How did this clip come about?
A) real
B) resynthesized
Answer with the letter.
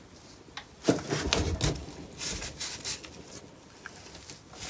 A